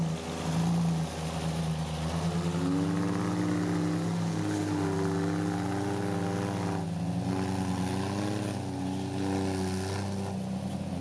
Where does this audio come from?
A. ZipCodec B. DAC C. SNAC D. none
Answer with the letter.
D